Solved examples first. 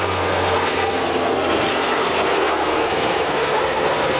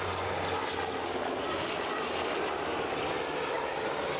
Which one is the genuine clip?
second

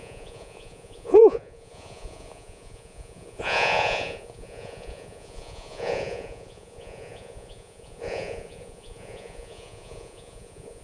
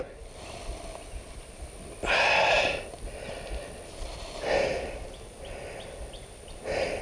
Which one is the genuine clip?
second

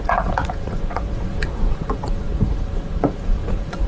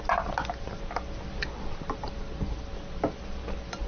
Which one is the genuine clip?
second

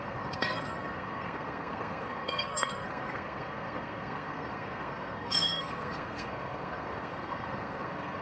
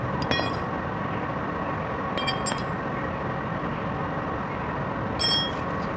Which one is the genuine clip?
second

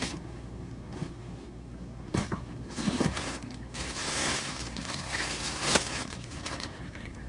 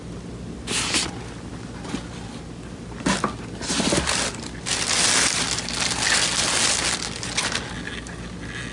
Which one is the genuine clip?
second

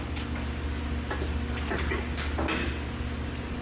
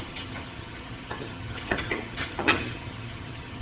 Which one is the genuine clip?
first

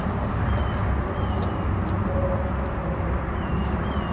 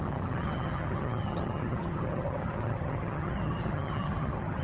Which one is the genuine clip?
first